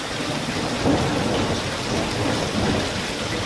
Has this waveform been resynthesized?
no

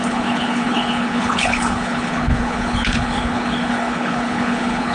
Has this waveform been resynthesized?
yes